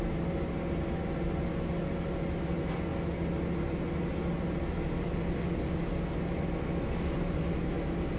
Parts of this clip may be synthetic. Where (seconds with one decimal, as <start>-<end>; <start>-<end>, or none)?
none